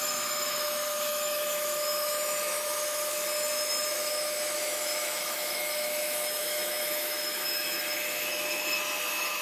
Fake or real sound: fake